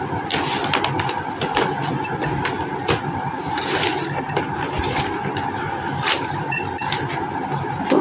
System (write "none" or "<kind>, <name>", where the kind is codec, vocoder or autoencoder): none